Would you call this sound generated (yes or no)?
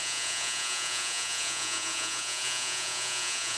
yes